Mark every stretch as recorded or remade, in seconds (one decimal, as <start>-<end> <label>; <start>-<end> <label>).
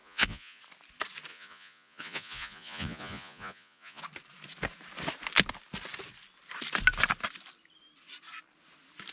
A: 0.0-0.6 remade; 0.6-1.3 recorded; 1.3-4.0 remade; 4.0-9.1 recorded